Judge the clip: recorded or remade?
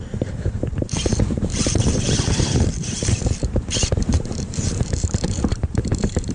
remade